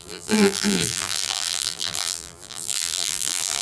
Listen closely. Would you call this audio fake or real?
fake